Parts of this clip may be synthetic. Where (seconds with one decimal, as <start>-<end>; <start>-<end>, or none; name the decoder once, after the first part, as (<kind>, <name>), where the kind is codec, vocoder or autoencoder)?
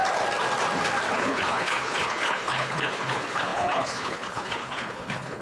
1.1-5.4 (codec, HILCodec)